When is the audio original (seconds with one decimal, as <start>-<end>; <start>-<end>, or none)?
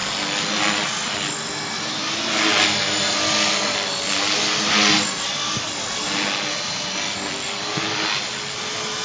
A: 0.0-9.0